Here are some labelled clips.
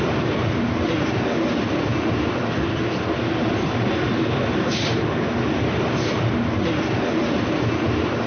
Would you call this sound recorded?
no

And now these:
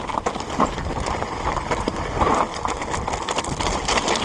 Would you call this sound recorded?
yes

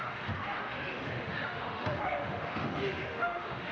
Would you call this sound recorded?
no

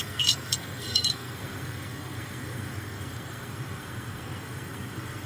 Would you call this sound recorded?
no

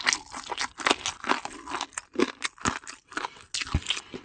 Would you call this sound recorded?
yes